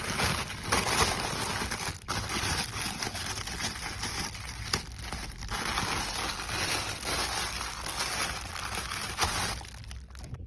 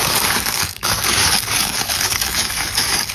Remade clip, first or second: second